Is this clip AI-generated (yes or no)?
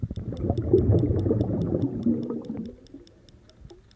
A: no